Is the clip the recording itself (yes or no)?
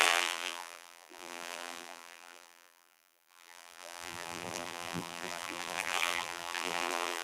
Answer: no